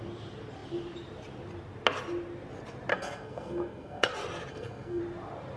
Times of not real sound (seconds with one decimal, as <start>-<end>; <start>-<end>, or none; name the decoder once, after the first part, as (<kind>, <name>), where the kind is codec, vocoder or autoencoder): 2.9-4.1 (codec, SNAC); 4.5-5.0